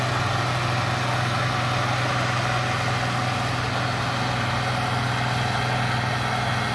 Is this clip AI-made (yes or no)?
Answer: no